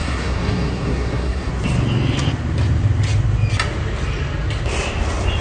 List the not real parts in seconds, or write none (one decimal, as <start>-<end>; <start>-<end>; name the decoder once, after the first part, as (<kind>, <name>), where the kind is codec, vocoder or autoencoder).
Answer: 0.0-1.5 (codec, SNAC)